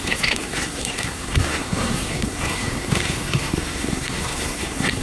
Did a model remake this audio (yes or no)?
yes